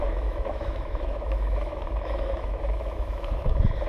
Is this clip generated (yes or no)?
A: yes